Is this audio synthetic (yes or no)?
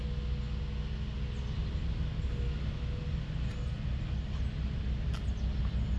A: no